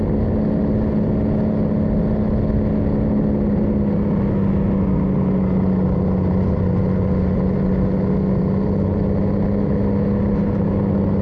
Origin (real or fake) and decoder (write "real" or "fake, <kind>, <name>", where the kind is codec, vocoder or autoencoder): real